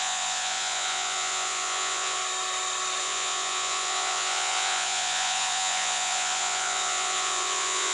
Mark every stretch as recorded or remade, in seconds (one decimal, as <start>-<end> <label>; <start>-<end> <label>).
0.0-2.2 remade; 2.2-3.0 recorded; 3.0-7.9 remade

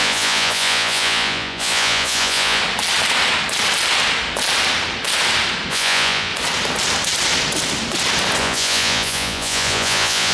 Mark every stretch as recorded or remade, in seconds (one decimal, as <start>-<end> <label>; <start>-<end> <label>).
0.0-2.6 remade; 2.6-5.7 recorded; 5.7-6.3 remade; 6.3-8.4 recorded; 8.4-10.3 remade

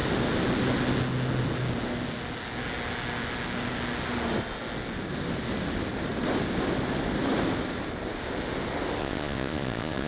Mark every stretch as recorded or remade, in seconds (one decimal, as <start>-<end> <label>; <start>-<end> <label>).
0.0-9.0 recorded; 9.0-10.1 remade

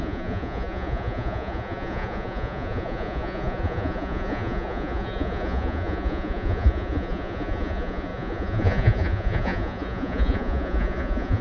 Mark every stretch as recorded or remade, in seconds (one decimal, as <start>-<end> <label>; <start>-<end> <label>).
0.0-11.4 remade

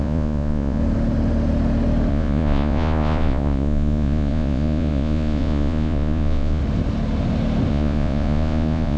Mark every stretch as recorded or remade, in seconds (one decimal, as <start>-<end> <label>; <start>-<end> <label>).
0.0-0.8 remade; 0.8-2.1 recorded; 2.1-6.6 remade; 6.6-7.7 recorded; 7.7-9.0 remade

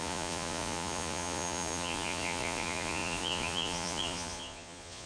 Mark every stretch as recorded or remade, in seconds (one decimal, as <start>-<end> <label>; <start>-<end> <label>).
0.0-5.1 remade